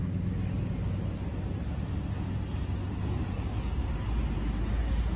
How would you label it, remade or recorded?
recorded